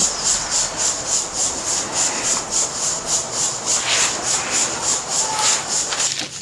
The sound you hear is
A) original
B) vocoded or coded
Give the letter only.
A